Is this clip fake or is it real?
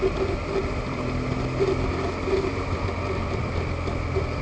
real